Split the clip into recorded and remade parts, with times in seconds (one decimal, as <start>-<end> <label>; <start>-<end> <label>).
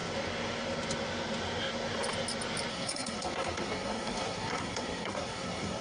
0.0-2.7 recorded; 2.7-5.8 remade